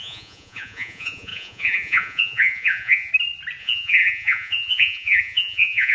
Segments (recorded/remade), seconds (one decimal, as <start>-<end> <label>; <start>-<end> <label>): 0.0-3.1 remade; 3.1-3.6 recorded; 3.6-5.9 remade